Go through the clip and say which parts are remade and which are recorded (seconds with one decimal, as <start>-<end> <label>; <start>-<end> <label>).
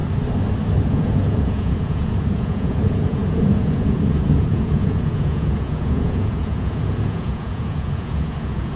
0.0-0.9 recorded; 0.9-8.8 remade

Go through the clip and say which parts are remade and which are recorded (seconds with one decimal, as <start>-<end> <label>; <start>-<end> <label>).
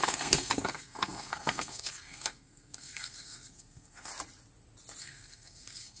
0.0-4.1 remade; 4.1-5.0 recorded; 5.0-6.0 remade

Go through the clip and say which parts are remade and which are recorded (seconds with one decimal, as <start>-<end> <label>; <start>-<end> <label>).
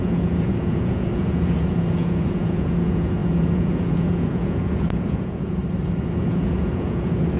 0.0-5.6 remade; 5.6-6.2 recorded; 6.2-7.4 remade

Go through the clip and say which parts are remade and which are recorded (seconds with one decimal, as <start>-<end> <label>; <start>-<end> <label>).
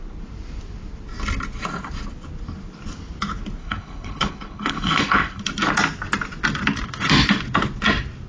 0.0-3.6 recorded; 3.6-5.4 remade; 5.4-8.3 recorded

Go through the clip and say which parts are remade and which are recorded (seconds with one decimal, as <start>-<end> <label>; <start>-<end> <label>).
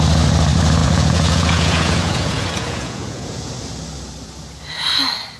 0.0-0.8 recorded; 0.8-3.5 remade; 3.5-5.4 recorded